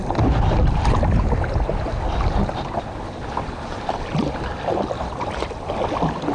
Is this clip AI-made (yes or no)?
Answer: no